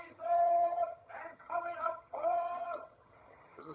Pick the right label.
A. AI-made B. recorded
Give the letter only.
A